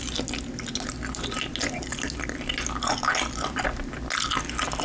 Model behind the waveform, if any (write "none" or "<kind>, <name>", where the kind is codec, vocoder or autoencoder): none